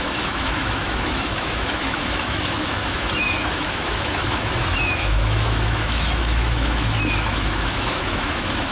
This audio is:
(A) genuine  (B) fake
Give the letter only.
B